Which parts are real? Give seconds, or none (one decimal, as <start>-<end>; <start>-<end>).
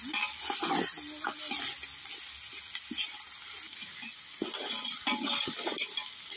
0.0-6.4